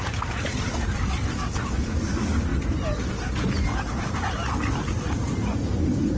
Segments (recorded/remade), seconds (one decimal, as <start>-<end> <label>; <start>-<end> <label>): 0.0-6.2 recorded